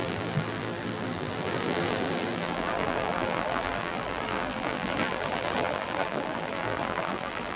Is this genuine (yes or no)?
no